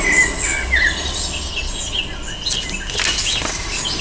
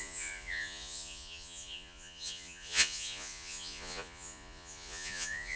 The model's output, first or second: second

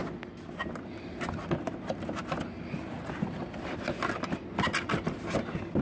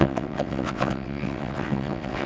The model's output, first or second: second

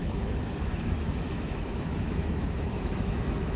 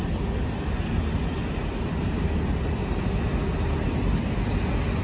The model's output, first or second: first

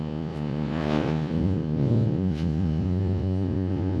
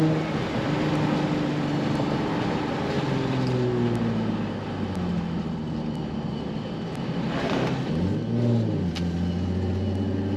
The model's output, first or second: first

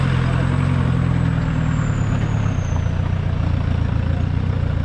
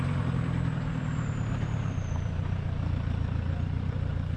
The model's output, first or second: second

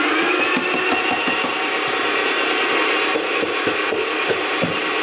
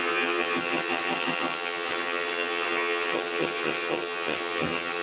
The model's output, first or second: second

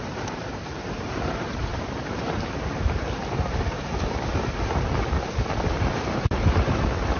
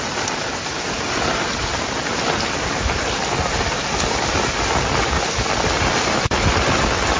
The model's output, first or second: first